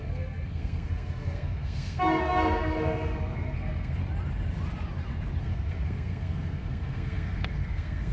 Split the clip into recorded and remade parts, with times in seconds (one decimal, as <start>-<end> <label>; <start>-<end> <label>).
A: 0.0-4.0 remade; 4.0-5.4 recorded; 5.4-8.1 remade